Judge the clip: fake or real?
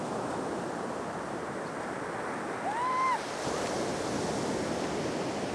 real